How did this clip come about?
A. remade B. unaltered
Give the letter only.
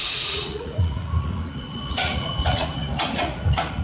A